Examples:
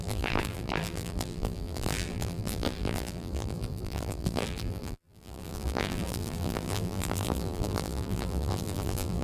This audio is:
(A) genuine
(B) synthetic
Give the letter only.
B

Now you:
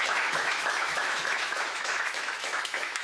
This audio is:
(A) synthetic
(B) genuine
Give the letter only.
A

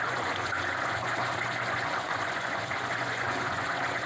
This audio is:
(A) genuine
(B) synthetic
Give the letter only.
B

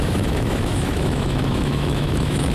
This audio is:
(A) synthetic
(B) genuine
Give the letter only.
A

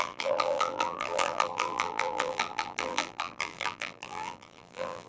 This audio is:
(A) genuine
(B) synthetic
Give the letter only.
B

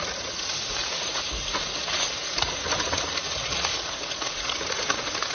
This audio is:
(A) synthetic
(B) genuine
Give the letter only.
A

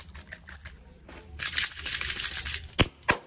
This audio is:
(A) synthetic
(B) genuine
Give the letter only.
B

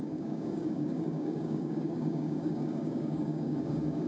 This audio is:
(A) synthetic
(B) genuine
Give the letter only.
A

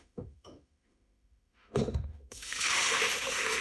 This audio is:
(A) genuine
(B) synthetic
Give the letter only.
B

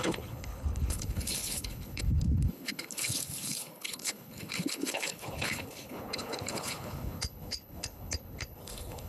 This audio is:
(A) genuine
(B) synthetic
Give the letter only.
B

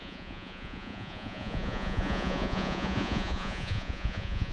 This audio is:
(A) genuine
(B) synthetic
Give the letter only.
B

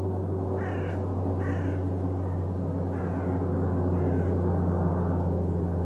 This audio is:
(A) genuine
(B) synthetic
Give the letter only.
A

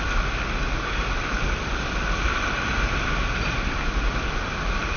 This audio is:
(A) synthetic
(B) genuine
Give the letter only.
B